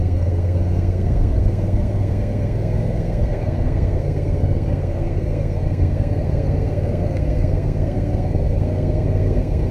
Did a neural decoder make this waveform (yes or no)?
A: yes